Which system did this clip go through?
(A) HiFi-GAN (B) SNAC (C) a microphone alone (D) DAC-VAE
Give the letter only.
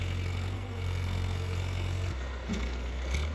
B